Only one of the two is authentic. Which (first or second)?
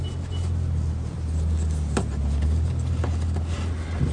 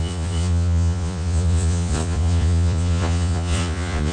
first